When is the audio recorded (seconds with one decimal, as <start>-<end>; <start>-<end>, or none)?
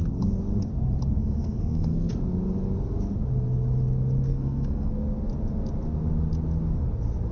0.0-1.2; 2.1-4.3; 4.9-7.3